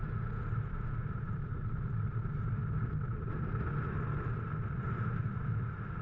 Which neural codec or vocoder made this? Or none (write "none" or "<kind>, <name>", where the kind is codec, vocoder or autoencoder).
none